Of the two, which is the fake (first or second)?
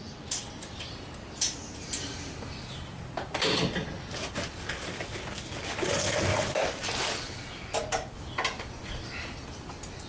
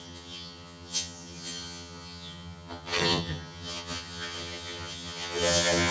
second